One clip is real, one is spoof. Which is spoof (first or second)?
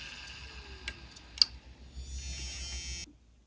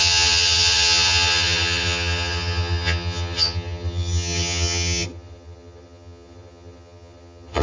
second